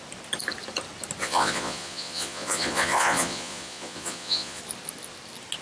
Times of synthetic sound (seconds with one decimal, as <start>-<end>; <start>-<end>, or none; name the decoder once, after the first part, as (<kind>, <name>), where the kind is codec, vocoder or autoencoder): 1.2-4.6 (vocoder, Vocos)